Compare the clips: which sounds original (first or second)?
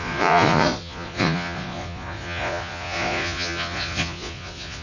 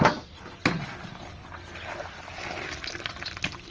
second